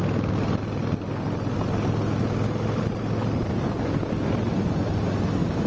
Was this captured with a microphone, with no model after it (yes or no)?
yes